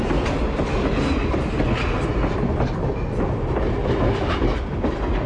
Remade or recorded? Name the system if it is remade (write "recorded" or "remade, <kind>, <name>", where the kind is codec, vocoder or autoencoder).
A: recorded